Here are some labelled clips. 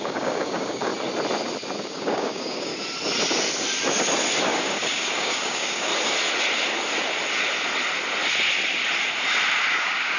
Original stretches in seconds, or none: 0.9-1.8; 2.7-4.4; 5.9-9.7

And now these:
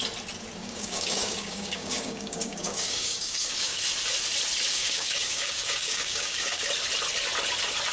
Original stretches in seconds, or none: 0.0-0.6; 3.8-4.7; 6.6-7.9

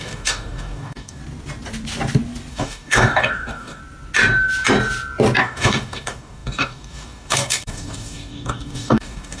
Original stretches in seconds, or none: 1.2-2.5; 3.8-5.4

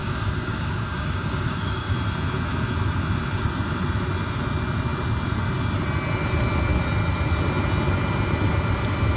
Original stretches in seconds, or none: 1.9-9.2

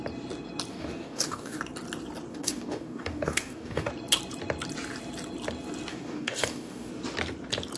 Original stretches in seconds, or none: 0.0-0.7; 1.6-2.3; 3.9-5.9; 6.9-7.8

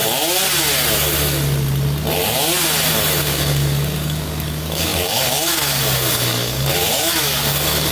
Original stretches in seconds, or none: 0.0-3.2

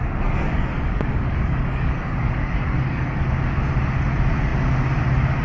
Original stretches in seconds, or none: 3.2-5.4